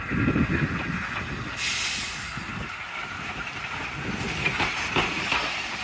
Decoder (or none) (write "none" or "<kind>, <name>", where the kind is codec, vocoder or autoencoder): none